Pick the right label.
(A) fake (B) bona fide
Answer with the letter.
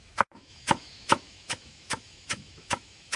A